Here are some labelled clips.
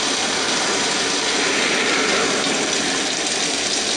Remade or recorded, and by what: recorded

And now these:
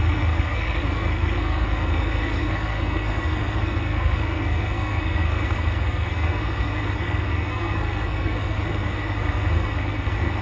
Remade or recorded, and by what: remade, codec, SNAC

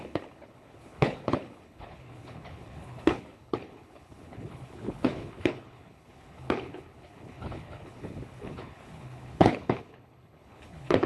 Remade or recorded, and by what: remade, codec, HILCodec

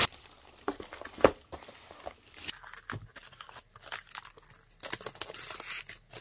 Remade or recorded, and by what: recorded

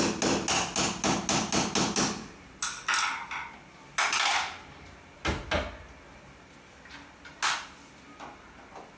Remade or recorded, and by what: recorded